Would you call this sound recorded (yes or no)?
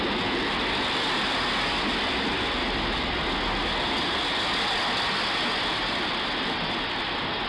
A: yes